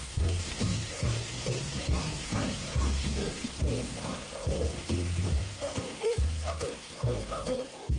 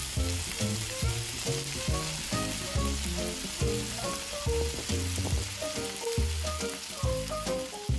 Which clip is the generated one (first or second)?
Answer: first